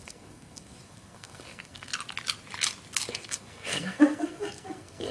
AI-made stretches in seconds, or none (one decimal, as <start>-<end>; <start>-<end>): 0.0-1.9; 3.1-5.1